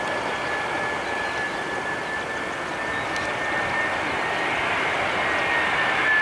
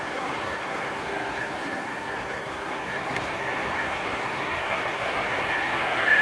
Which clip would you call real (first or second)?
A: first